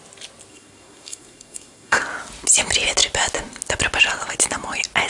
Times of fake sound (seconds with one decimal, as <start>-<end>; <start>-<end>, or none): 0.5-2.0